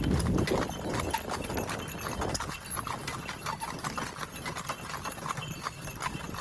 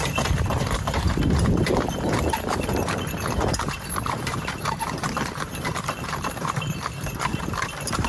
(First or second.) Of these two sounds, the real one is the first